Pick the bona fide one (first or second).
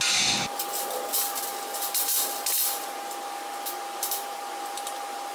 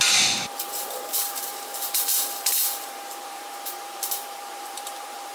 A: first